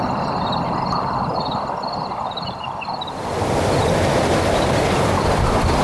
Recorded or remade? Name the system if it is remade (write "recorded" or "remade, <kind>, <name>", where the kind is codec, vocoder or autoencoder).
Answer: recorded